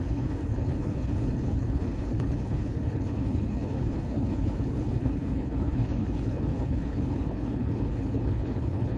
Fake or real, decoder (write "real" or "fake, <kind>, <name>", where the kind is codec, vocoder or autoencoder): fake, codec, HILCodec